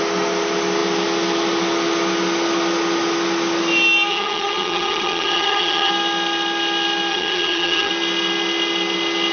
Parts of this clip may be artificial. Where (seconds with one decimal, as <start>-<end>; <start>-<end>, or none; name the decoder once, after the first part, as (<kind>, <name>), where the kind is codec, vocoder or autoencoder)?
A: 4.1-5.9 (vocoder, HiFi-GAN); 7.1-7.9